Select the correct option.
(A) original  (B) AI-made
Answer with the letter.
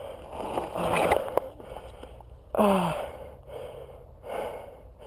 A